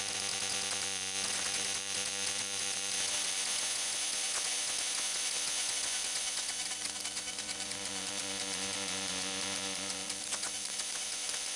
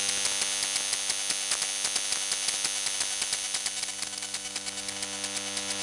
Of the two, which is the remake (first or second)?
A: first